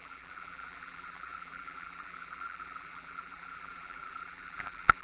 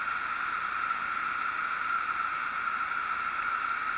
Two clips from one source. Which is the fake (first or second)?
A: first